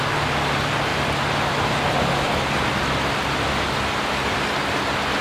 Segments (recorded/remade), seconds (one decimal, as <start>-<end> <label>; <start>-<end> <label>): 0.0-5.2 recorded